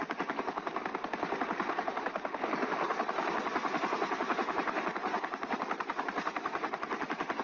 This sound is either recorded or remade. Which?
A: remade